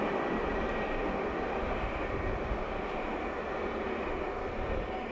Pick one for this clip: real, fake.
fake